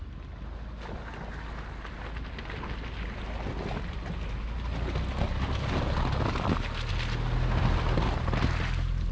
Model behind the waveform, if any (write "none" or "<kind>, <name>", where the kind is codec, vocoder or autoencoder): none